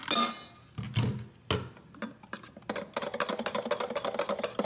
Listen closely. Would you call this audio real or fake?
real